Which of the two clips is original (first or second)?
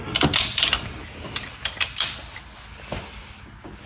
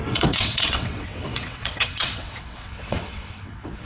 first